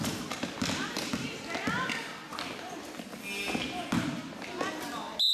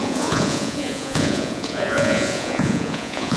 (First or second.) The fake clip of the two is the second